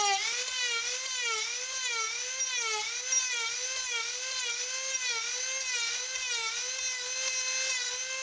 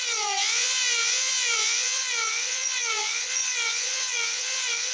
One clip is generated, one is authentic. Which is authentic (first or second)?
first